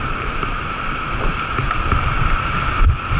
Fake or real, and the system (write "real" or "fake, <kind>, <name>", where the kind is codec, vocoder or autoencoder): fake, vocoder, BigVGAN v2